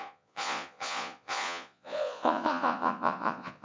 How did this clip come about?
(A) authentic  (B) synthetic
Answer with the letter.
B